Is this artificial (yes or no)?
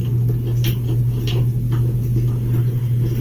no